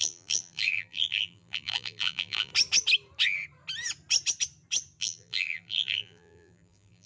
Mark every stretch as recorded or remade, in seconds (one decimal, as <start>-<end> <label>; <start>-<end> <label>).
0.0-2.5 remade; 2.5-5.0 recorded; 5.0-7.1 remade